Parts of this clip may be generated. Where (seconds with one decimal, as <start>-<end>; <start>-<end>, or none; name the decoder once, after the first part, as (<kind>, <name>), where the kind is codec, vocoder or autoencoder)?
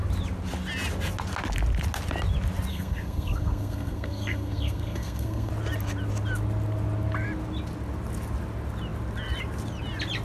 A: 2.7-5.5 (codec, SNAC)